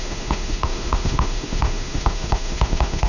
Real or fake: fake